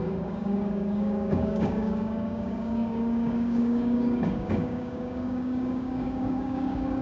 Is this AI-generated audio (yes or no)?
yes